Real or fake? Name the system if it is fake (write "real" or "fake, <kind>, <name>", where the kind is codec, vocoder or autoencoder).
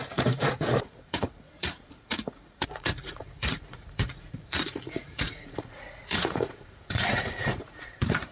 fake, vocoder, Vocos